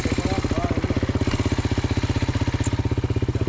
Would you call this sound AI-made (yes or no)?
no